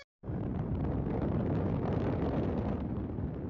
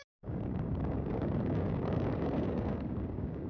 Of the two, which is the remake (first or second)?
second